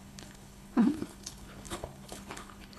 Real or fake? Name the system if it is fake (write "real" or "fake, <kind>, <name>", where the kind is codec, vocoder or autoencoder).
fake, codec, HILCodec